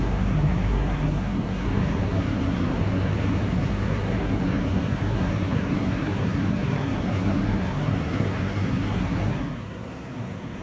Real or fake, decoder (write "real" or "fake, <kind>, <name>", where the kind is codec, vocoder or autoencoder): fake, codec, SNAC